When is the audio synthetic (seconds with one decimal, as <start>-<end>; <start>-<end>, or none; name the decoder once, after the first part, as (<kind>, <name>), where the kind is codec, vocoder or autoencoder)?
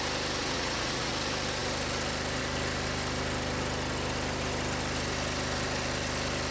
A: 0.4-1.1 (vocoder, Vocos)